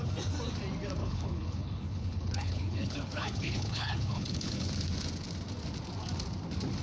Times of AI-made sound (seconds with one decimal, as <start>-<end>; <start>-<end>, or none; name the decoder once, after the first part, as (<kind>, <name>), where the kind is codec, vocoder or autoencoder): 1.0-4.7 (codec, HILCodec)